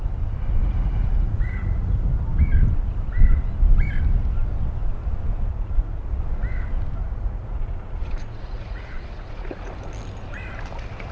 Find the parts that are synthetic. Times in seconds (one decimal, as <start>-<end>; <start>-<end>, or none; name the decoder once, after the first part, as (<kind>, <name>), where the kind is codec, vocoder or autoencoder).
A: 0.6-2.1 (vocoder, Vocos); 5.5-6.2; 7.0-9.7